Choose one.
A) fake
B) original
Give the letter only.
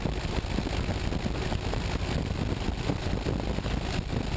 B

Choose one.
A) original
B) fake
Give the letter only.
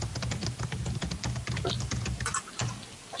A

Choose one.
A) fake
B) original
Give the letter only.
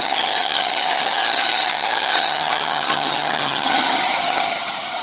A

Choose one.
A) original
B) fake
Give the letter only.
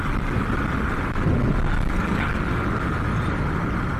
A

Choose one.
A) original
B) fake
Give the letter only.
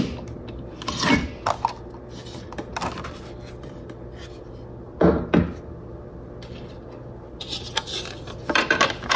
A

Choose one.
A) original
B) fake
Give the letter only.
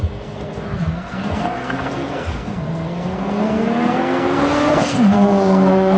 B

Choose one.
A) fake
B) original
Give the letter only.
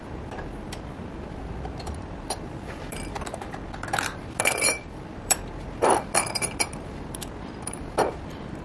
A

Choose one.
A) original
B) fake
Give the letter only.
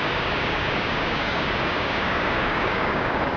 B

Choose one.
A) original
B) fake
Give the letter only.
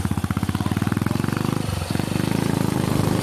A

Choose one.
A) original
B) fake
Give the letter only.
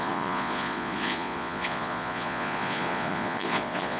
B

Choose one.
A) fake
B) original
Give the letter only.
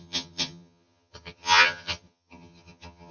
A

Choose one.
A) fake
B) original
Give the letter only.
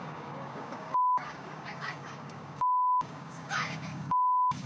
A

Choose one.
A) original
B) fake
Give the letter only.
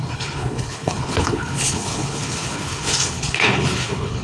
B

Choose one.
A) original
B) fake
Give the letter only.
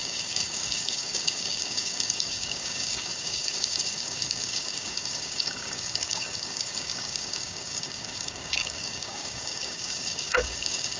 B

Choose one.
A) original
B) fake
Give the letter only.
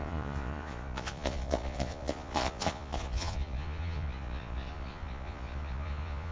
B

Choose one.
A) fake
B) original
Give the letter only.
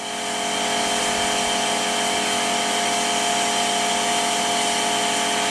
B